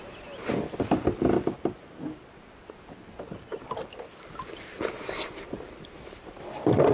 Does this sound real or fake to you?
real